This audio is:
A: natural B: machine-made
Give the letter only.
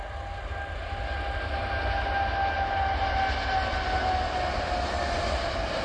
A